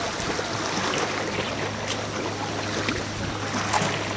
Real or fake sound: real